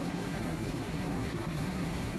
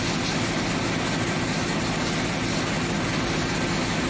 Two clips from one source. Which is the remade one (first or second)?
first